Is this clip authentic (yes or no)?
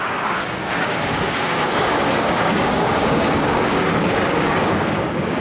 no